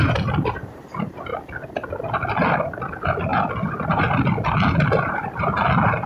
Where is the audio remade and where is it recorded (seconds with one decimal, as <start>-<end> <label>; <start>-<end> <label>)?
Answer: 0.0-1.3 remade; 1.3-2.9 recorded; 2.9-3.3 remade; 3.3-5.1 recorded; 5.1-6.1 remade